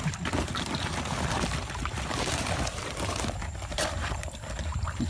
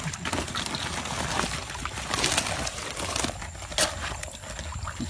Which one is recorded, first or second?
second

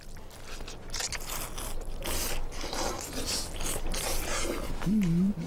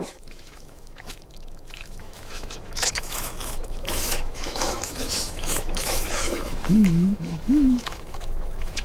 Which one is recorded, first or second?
first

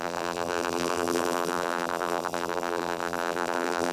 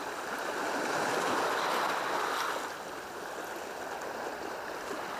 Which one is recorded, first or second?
second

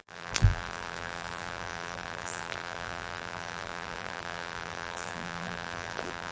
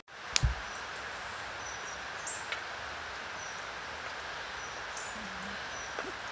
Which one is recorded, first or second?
second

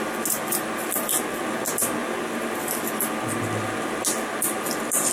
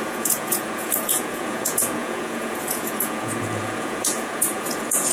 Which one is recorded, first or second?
first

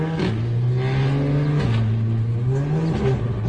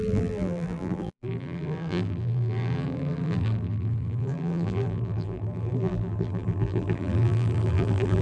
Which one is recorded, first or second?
first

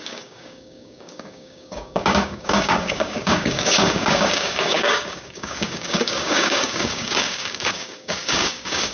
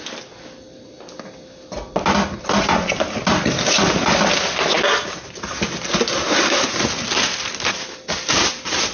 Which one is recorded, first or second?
second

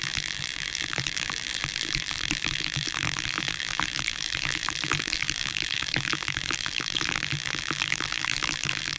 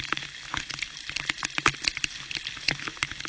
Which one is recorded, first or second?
second